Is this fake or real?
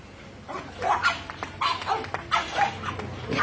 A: real